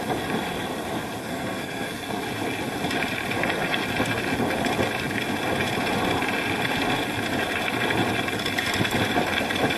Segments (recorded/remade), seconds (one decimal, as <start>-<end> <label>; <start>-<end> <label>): 0.0-1.2 recorded; 1.2-2.2 remade; 2.2-9.8 recorded